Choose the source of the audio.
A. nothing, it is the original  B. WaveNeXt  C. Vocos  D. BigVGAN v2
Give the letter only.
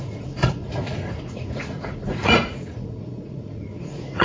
C